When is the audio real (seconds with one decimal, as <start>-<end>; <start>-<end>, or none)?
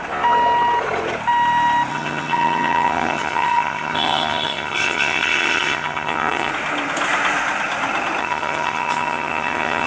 0.0-1.9; 6.5-8.2